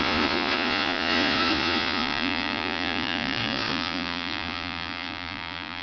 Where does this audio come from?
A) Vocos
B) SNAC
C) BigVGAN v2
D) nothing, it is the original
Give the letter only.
A